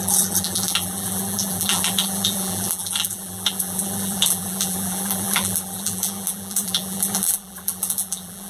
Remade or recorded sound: remade